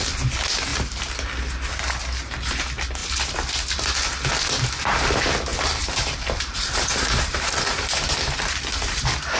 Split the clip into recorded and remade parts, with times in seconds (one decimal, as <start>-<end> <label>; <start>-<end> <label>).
0.0-5.5 recorded; 5.5-8.9 remade; 8.9-9.4 recorded